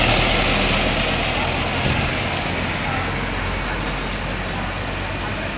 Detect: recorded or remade recorded